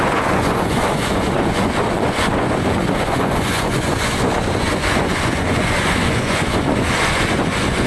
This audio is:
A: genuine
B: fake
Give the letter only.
B